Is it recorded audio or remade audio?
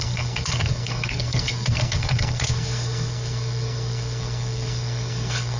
remade